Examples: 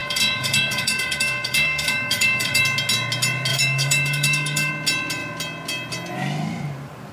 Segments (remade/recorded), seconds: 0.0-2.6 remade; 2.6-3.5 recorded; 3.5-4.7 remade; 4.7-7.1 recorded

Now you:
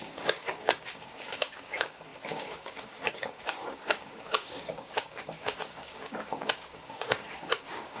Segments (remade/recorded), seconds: 0.0-8.0 remade

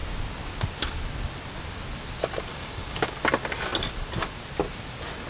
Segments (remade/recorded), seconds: 0.0-2.5 recorded; 2.5-3.1 remade; 3.1-5.3 recorded

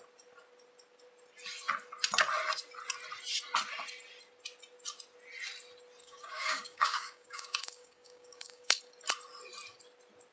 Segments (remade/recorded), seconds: 0.0-6.0 recorded; 6.0-8.8 remade; 8.8-10.3 recorded

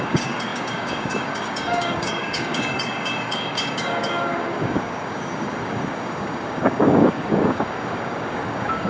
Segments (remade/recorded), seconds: 0.0-8.9 remade

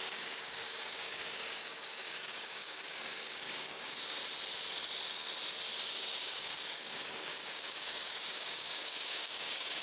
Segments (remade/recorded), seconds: 0.0-4.2 remade; 4.2-6.0 recorded; 6.0-9.8 remade